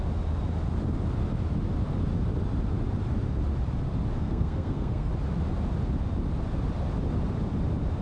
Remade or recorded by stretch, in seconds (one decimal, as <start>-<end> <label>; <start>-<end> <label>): 0.0-4.2 recorded; 4.2-5.1 remade; 5.1-8.0 recorded